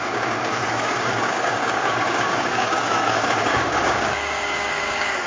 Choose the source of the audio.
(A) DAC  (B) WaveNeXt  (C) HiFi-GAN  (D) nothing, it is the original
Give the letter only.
A